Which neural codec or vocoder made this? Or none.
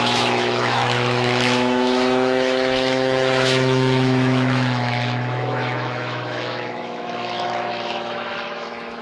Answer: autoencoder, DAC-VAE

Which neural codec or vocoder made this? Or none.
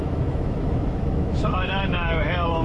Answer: autoencoder, DAC-VAE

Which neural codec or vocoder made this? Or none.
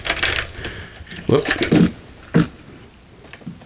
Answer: none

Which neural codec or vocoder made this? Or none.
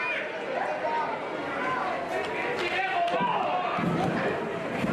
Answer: none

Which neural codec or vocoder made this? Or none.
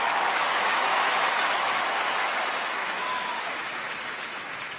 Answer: autoencoder, DAC-VAE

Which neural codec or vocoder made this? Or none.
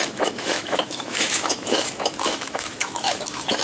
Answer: autoencoder, DAC-VAE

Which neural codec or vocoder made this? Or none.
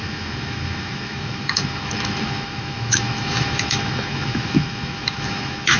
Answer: autoencoder, DAC-VAE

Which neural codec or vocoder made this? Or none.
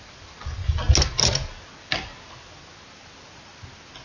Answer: none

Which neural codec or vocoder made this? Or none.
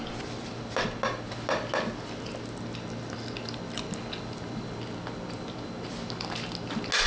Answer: none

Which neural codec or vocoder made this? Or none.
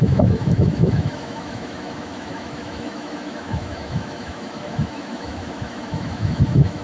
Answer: autoencoder, DAC-VAE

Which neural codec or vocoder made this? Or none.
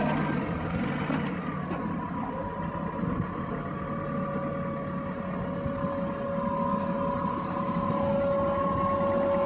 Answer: none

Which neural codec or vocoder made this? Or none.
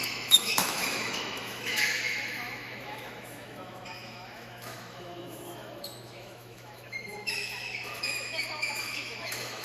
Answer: autoencoder, DAC-VAE